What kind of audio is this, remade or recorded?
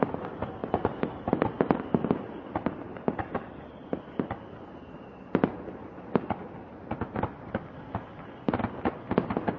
recorded